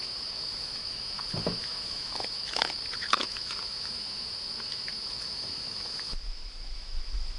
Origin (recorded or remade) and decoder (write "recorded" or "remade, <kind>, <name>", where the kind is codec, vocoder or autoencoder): remade, autoencoder, DAC-VAE